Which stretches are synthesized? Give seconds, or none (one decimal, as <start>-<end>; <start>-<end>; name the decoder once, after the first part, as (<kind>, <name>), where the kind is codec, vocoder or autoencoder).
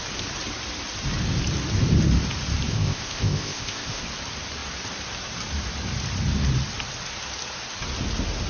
2.7-4.0 (codec, ZipCodec)